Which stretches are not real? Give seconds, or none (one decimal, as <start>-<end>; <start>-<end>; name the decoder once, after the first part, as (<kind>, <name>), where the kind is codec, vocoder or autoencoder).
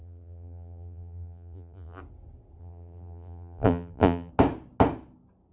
0.0-2.0 (vocoder, BigVGAN v2); 2.6-4.3